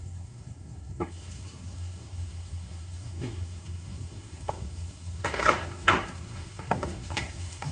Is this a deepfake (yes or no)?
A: yes